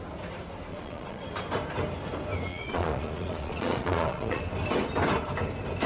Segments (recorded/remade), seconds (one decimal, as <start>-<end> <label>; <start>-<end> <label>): 0.0-0.7 recorded; 0.7-1.2 remade; 1.2-2.5 recorded; 2.5-4.4 remade; 4.4-5.9 recorded